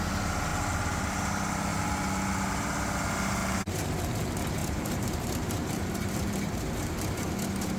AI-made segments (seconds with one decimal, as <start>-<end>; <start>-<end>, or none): 3.4-4.0; 4.6-7.1